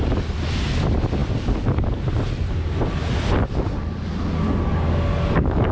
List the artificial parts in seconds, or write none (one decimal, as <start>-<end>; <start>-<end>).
4.7-5.7